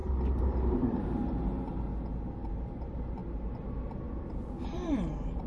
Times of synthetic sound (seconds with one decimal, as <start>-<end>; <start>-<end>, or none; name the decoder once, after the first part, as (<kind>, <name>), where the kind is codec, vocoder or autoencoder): 0.0-1.9 (vocoder, BigVGAN v2); 2.5-3.2; 4.4-5.5